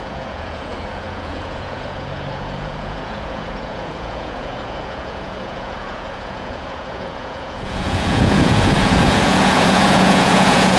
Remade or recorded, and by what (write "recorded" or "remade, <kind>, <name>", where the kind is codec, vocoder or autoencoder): remade, vocoder, Vocos